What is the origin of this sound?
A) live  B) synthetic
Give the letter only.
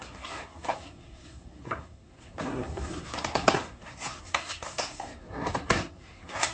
B